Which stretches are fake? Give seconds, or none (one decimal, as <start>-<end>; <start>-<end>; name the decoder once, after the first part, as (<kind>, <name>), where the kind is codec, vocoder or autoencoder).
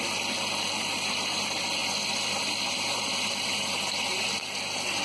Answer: 0.0-1.8 (vocoder, BigVGAN v2); 4.4-5.0